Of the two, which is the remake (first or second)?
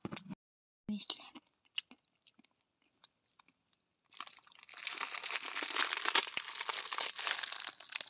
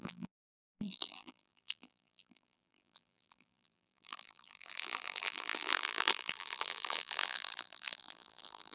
second